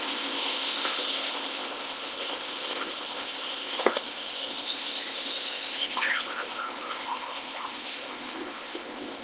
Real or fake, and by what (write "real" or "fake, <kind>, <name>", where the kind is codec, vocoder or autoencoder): fake, codec, ZipCodec